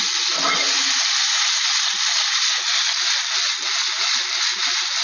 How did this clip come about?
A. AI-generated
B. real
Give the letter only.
B